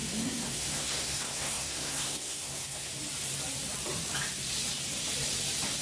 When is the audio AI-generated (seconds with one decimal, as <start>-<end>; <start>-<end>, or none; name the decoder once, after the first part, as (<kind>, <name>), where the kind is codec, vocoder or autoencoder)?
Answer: 0.0-2.9 (codec, SNAC)